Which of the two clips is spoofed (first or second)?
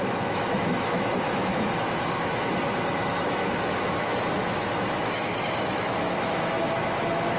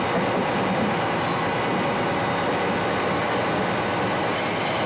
first